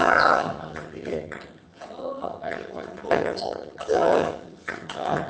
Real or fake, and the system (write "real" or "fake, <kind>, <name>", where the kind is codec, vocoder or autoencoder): fake, vocoder, HiFi-GAN